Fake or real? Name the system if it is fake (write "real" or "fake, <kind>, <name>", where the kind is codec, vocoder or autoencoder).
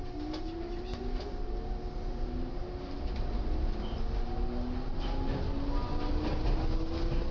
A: real